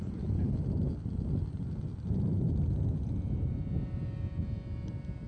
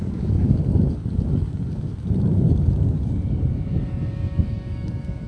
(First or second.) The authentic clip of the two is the first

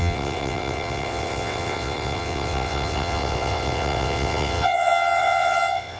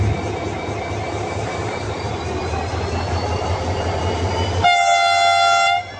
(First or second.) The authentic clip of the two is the second